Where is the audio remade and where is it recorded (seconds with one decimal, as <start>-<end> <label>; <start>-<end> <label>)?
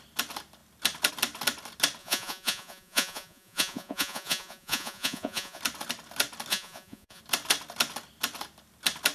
0.0-2.0 recorded; 2.0-5.6 remade; 5.6-6.5 recorded; 6.5-7.2 remade; 7.2-9.1 recorded